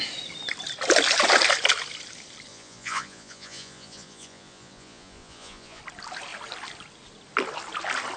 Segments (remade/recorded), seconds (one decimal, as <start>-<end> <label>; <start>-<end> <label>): 0.0-2.5 recorded; 2.5-5.8 remade; 5.8-8.2 recorded